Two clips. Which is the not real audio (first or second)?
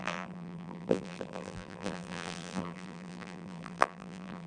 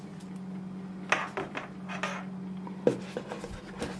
first